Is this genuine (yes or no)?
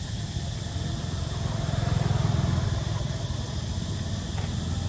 yes